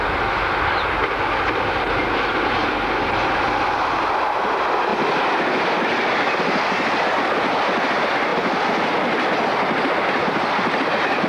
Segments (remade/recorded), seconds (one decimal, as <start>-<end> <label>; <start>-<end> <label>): 0.0-11.3 recorded